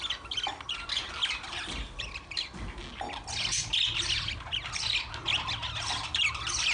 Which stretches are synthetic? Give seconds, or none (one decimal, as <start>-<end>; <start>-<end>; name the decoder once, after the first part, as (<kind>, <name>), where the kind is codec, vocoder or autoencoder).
none

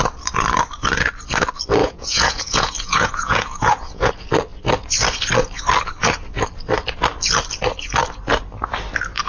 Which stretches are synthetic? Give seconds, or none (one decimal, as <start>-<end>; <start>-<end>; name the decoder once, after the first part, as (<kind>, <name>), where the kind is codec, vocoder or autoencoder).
1.8-4.1 (vocoder, Vocos)

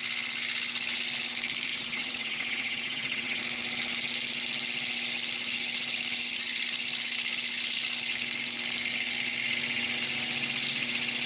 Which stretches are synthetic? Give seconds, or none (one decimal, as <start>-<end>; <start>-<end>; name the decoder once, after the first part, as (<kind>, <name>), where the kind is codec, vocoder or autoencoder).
1.7-3.4 (vocoder, WaveNeXt)

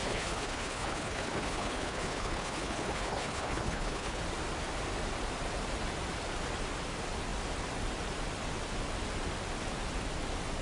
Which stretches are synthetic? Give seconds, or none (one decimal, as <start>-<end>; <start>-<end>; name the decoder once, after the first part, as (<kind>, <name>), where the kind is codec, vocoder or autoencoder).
0.0-4.2 (codec, HILCodec)

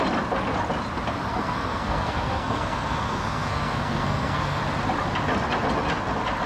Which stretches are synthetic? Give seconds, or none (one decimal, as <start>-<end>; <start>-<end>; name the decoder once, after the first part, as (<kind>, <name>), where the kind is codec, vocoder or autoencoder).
1.3-4.6 (codec, SNAC)

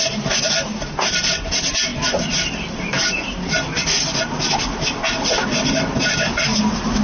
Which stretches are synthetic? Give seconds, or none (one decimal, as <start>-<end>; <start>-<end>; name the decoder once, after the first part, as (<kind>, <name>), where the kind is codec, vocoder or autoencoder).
none